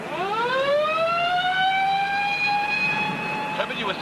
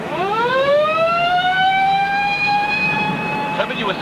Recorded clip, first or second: first